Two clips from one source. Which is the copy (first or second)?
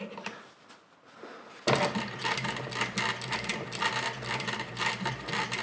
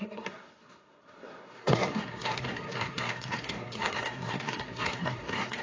second